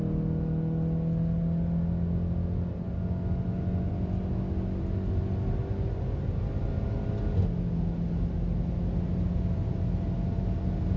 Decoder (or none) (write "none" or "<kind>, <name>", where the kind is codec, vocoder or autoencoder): none